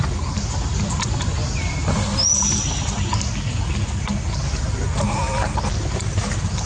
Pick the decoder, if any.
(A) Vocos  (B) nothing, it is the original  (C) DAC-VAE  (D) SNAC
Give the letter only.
B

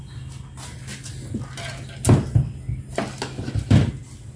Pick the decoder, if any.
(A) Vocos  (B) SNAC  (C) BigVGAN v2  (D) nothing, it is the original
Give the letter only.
D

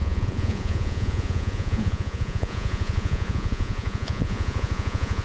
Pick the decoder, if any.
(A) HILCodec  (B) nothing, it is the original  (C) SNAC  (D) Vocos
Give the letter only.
D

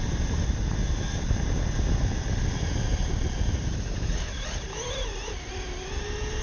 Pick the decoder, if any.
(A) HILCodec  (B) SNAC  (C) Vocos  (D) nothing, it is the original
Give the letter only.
D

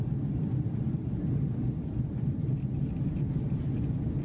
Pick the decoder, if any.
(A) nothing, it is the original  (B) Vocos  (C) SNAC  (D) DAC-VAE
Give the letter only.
A